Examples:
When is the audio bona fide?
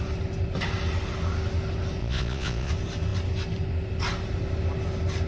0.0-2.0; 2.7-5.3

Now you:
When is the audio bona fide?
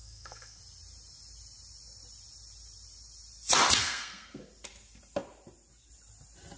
0.6-3.8; 4.4-6.6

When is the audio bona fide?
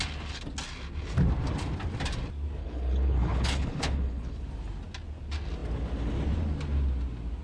0.0-2.6; 4.4-7.4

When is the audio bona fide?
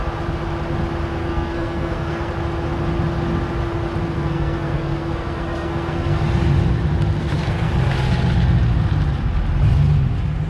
0.0-1.2; 2.3-4.0; 6.2-7.2; 7.7-10.5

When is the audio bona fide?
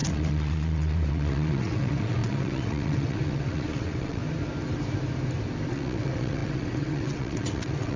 4.2-5.7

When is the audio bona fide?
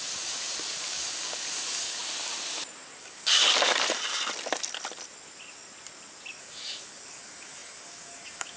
2.0-3.0; 3.4-6.4